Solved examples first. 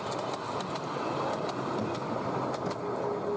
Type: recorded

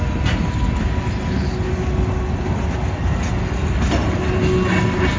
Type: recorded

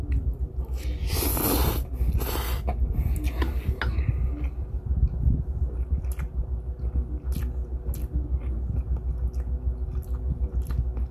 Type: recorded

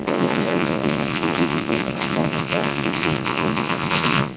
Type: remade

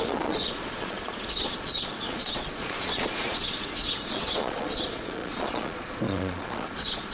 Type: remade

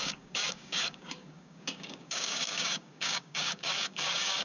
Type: remade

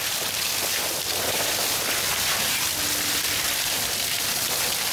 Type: recorded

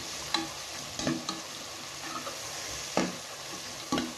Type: recorded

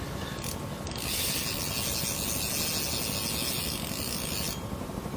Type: recorded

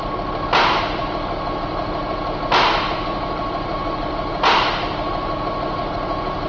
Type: recorded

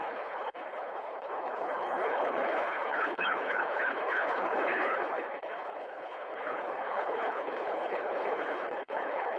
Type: remade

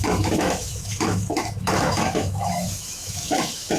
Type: remade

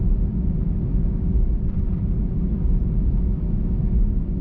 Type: recorded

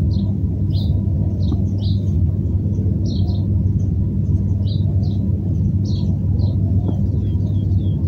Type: recorded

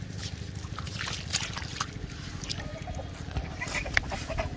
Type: recorded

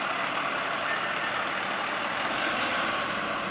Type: recorded